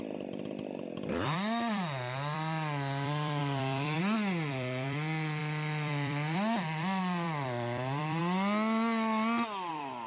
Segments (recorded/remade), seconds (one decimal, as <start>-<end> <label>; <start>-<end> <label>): 0.0-8.2 remade; 8.2-9.7 recorded; 9.7-10.1 remade